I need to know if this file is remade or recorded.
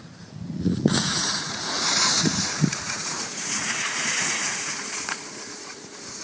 remade